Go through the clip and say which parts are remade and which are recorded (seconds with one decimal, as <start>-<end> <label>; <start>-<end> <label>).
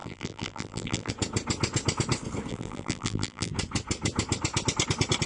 0.0-1.1 remade; 1.1-2.5 recorded; 2.5-3.5 remade; 3.5-5.3 recorded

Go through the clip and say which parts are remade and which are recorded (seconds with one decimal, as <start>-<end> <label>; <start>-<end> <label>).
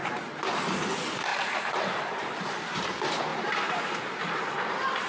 0.0-0.5 remade; 0.5-1.3 recorded; 1.3-2.8 remade; 2.8-3.3 recorded; 3.3-3.8 remade; 3.8-5.1 recorded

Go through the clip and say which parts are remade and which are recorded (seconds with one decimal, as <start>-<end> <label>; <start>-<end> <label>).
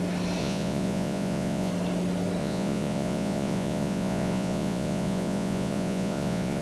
0.0-0.4 recorded; 0.4-1.7 remade; 1.7-2.4 recorded; 2.4-6.6 remade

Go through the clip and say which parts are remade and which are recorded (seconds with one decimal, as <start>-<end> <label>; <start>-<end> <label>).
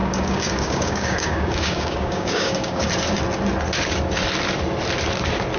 0.0-2.9 remade; 2.9-5.6 recorded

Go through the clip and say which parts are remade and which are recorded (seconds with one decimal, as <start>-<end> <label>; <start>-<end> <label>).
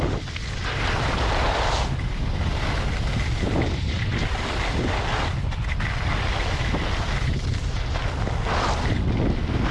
0.0-9.7 recorded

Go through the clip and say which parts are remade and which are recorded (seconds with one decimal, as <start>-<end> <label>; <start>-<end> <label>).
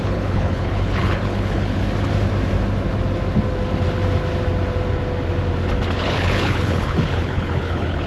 0.0-1.8 remade; 1.8-5.9 recorded; 5.9-8.1 remade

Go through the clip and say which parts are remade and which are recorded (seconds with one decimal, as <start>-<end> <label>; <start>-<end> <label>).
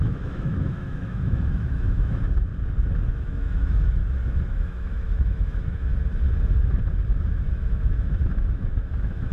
0.0-2.5 remade; 2.5-3.1 recorded; 3.1-4.0 remade; 4.0-4.5 recorded; 4.5-5.9 remade; 5.9-7.2 recorded; 7.2-9.3 remade